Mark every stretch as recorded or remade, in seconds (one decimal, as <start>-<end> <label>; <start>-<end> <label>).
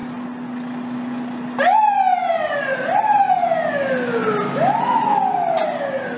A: 0.0-6.2 recorded